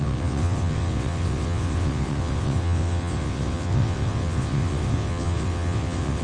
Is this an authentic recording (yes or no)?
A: no